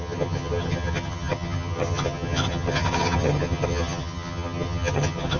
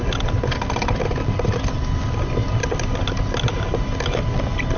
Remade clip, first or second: first